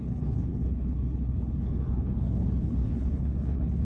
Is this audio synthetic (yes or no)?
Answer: yes